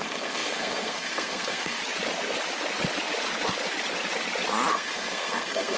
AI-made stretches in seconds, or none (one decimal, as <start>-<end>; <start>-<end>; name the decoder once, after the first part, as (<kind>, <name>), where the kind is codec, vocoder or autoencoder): 0.0-1.8 (codec, SNAC); 4.7-5.8